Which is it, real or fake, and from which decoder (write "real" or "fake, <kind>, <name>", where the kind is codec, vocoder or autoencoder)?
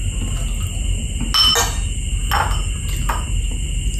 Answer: real